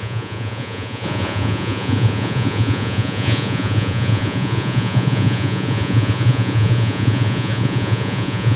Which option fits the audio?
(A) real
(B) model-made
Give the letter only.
B